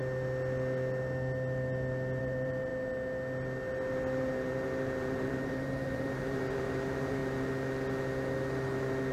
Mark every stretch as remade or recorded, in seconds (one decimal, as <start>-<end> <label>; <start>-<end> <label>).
0.0-2.2 recorded; 2.2-2.7 remade; 2.7-4.2 recorded; 4.2-7.2 remade; 7.2-9.1 recorded